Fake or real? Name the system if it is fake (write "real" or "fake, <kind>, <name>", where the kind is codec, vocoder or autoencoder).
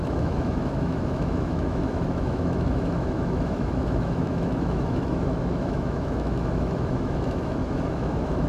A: fake, autoencoder, DAC-VAE